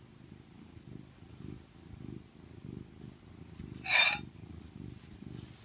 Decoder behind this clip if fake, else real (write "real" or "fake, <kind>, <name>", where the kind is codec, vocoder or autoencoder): real